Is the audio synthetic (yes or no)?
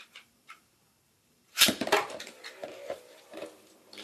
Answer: yes